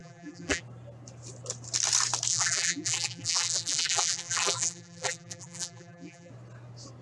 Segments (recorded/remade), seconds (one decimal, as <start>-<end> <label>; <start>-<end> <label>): 0.0-0.6 remade; 0.6-2.3 recorded; 2.3-6.3 remade; 6.3-7.0 recorded